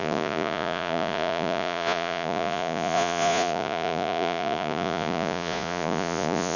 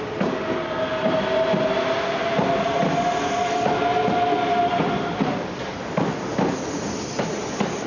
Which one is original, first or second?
second